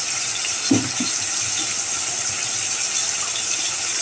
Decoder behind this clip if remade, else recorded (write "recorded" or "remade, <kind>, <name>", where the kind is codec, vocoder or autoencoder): recorded